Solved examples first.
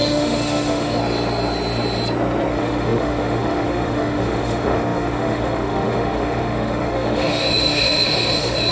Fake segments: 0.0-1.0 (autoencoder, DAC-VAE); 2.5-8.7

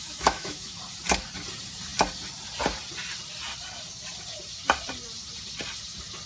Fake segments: 0.0-0.8 (autoencoder, DAC-VAE)